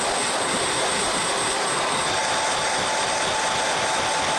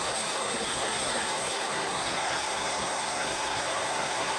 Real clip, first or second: first